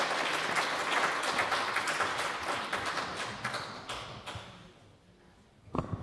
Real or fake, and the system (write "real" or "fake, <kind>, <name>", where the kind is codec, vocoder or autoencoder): real